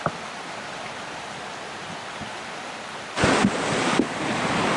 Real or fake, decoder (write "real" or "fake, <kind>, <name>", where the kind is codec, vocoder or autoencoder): real